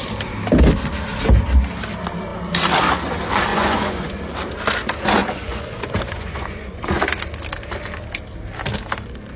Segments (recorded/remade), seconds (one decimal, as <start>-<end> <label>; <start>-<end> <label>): 0.0-3.5 recorded; 3.5-4.2 remade; 4.2-5.2 recorded; 5.2-7.0 remade; 7.0-9.4 recorded